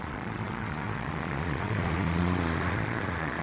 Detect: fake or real fake